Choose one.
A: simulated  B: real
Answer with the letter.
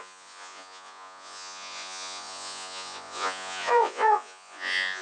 A